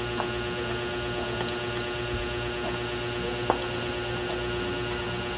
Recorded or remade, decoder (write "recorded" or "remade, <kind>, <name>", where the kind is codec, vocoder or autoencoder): recorded